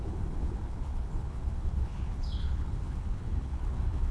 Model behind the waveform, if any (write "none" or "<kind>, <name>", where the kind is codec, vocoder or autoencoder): codec, HILCodec